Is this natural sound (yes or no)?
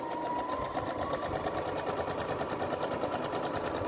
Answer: yes